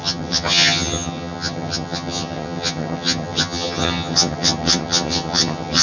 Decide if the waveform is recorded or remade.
remade